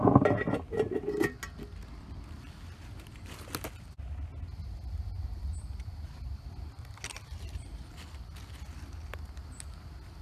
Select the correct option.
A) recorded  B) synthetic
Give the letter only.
A